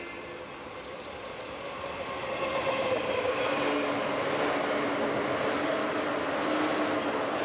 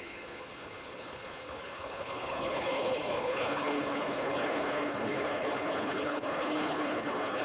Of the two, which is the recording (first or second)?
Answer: first